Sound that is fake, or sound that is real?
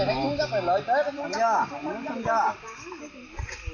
real